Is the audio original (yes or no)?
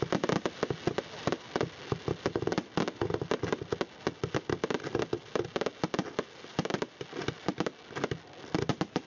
yes